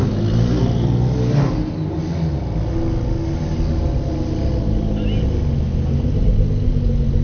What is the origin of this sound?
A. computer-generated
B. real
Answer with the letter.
B